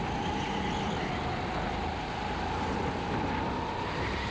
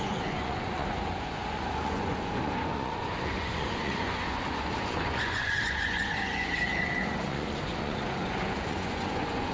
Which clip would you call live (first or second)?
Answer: first